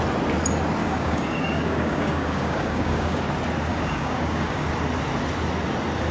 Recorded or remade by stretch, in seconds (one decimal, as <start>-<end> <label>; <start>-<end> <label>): 0.0-0.8 recorded; 0.8-3.2 remade; 3.2-3.7 recorded; 3.7-4.7 remade; 4.7-6.1 recorded

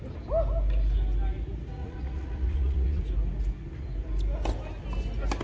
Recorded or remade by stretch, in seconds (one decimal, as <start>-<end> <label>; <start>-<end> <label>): 0.0-1.8 recorded; 1.8-3.0 remade; 3.0-5.4 recorded

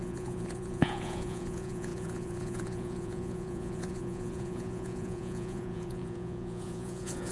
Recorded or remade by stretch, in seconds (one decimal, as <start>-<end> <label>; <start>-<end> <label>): 0.0-7.3 remade